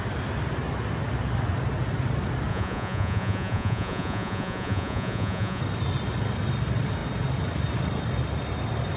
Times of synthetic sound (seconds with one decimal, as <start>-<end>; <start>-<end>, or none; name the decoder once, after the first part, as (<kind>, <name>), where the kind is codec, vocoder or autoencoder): 2.5-5.6 (vocoder, Vocos)